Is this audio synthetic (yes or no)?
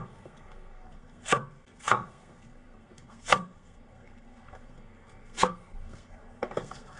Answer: yes